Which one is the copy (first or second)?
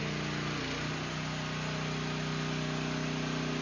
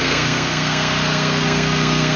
second